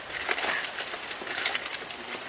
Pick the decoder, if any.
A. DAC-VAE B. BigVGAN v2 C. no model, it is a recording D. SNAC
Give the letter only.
B